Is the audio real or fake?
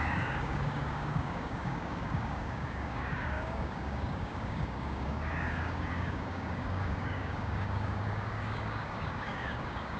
fake